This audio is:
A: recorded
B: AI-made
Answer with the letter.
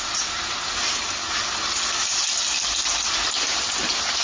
A